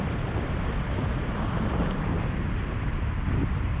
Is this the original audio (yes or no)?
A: no